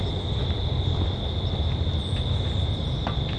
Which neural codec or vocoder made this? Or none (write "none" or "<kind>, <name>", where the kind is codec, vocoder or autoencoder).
none